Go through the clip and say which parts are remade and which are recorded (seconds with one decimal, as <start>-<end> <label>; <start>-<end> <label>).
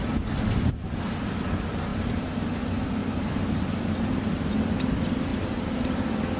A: 0.0-1.9 recorded; 1.9-2.6 remade; 2.6-3.0 recorded; 3.0-3.8 remade; 3.8-5.3 recorded; 5.3-6.0 remade; 6.0-6.4 recorded